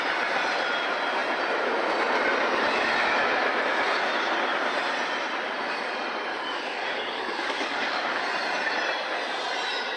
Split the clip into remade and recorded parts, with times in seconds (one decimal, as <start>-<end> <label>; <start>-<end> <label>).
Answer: 0.0-6.3 recorded; 6.3-8.2 remade; 8.2-10.0 recorded